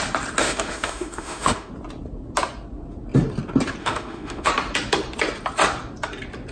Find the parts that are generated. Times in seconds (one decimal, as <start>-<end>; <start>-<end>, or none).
0.4-1.7; 3.8-4.5